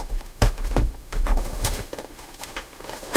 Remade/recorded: remade